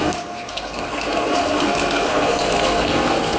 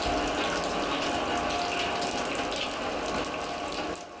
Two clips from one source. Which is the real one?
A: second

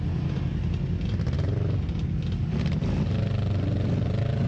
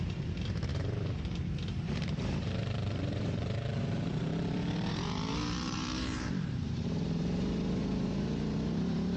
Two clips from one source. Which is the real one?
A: first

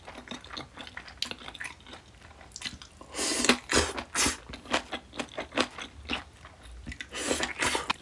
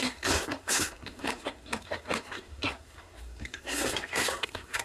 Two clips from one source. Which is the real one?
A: first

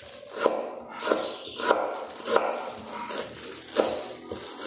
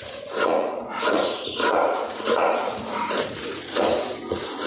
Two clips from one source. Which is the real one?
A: first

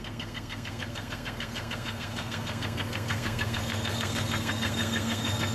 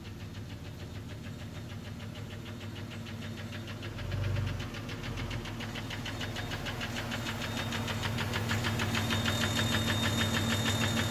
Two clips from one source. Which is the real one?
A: second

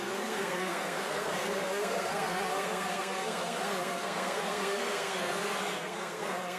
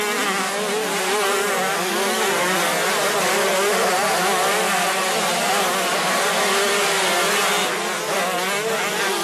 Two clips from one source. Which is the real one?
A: second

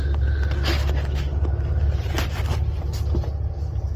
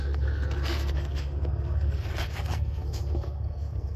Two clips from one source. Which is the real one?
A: first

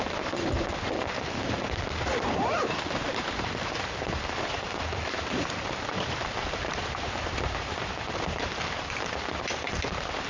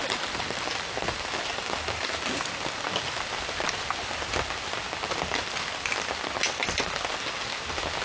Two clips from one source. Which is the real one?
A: second